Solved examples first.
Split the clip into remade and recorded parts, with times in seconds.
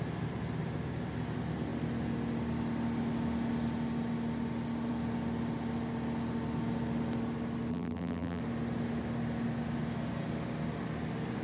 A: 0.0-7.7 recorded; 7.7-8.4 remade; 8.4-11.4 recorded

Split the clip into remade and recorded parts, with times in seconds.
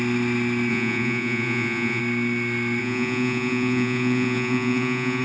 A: 0.0-0.7 recorded; 0.7-2.0 remade; 2.0-2.8 recorded; 2.8-5.2 remade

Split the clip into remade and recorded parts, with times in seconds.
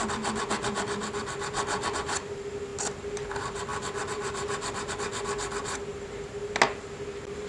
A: 0.0-3.7 recorded; 3.7-4.9 remade; 4.9-7.5 recorded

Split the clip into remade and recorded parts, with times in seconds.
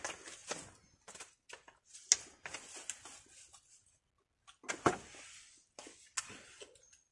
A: 0.0-7.1 recorded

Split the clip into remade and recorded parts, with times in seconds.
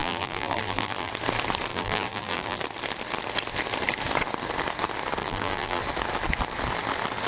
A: 0.0-1.1 remade; 1.1-1.7 recorded; 1.7-2.6 remade; 2.6-5.2 recorded; 5.2-5.8 remade; 5.8-7.3 recorded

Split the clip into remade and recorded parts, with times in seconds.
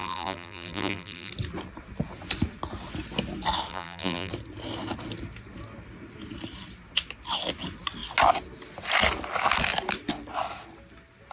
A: 0.0-1.3 remade; 1.3-3.7 recorded; 3.7-4.3 remade; 4.3-11.3 recorded